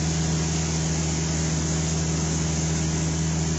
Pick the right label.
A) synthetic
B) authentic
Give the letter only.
B